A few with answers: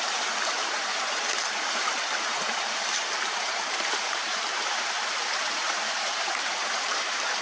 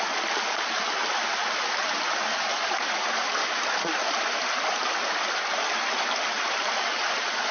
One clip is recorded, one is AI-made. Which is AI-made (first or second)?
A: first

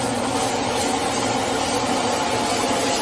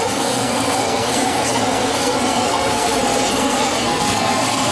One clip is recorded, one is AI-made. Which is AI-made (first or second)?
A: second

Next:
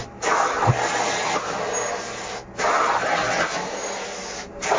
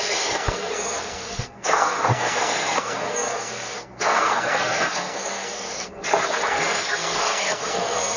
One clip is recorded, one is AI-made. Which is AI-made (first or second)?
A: second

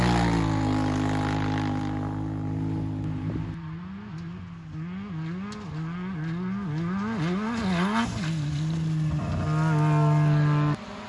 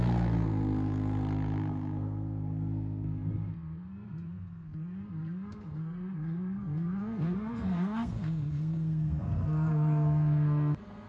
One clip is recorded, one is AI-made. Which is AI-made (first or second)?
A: second